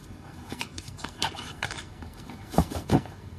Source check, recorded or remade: remade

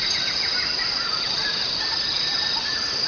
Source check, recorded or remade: recorded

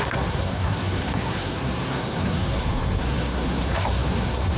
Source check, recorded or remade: remade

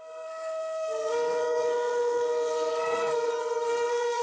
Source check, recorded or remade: remade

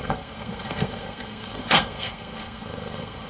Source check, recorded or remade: remade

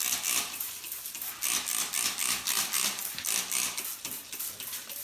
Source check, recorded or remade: recorded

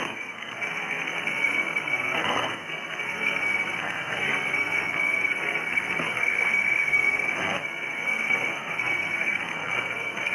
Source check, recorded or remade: remade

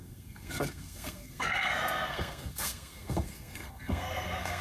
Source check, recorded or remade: remade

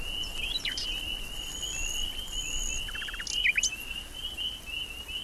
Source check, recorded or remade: recorded